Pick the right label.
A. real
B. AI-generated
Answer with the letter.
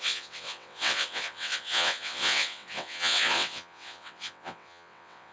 B